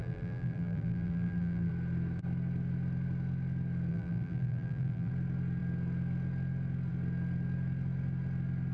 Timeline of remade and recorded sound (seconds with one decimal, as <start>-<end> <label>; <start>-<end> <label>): 0.0-1.7 remade; 1.7-3.9 recorded; 3.9-5.1 remade; 5.1-8.7 recorded